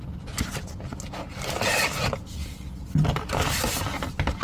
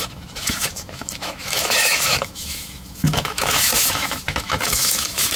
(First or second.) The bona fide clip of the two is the first